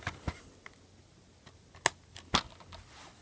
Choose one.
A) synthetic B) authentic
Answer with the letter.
B